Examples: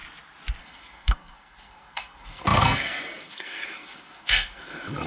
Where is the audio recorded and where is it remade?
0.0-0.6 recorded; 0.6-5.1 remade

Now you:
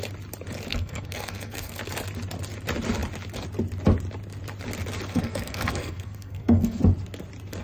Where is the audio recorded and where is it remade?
0.0-0.7 recorded; 0.7-1.8 remade; 1.8-5.1 recorded; 5.1-6.8 remade; 6.8-7.6 recorded

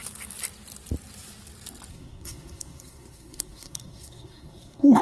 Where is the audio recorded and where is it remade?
0.0-1.9 recorded; 1.9-5.0 remade